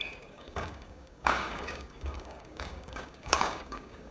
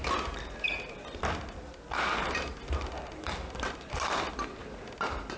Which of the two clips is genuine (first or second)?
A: second